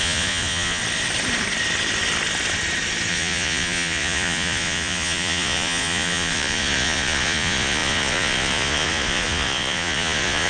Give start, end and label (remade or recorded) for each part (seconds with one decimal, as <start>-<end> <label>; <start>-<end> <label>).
0.0-0.8 remade; 0.8-3.1 recorded; 3.1-10.5 remade